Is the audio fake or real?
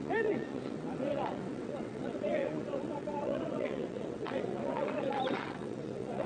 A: fake